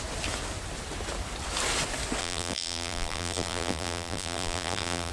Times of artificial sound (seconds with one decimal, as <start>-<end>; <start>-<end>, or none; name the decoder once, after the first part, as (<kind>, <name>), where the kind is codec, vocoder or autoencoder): 2.2-5.1 (vocoder, BigVGAN v2)